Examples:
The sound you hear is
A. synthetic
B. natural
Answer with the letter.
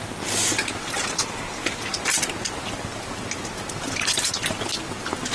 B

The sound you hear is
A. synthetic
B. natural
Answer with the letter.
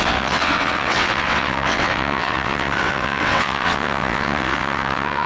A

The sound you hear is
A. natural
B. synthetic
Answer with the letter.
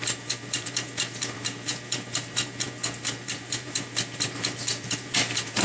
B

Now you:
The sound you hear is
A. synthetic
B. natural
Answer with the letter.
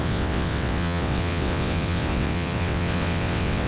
A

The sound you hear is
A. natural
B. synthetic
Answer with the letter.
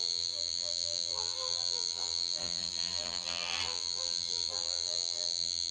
B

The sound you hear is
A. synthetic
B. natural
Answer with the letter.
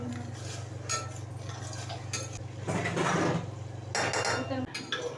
B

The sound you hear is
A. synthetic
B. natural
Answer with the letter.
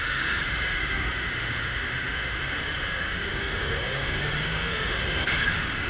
A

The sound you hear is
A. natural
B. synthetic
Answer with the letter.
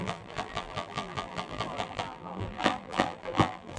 B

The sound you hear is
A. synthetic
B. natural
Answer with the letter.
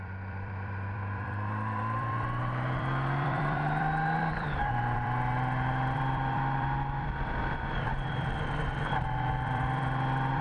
A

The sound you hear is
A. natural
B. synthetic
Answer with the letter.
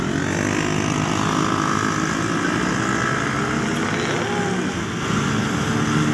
A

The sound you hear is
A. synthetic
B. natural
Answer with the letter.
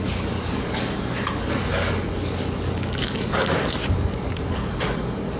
A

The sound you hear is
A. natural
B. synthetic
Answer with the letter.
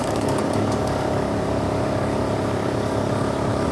B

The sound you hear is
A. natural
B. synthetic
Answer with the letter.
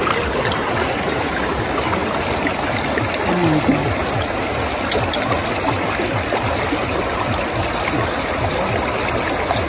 A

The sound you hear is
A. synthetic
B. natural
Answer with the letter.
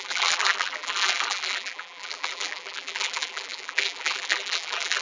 A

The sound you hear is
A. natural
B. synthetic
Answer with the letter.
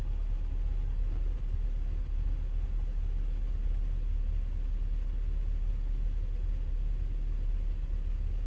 A